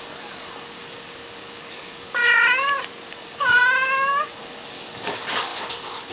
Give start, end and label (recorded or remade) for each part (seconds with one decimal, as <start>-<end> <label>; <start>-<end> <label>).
0.0-2.2 remade; 2.2-3.1 recorded; 3.1-3.6 remade; 3.6-4.2 recorded; 4.2-6.1 remade